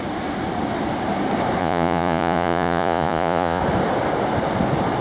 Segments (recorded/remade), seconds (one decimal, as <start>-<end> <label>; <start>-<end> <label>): 0.0-1.6 recorded; 1.6-3.6 remade; 3.6-5.0 recorded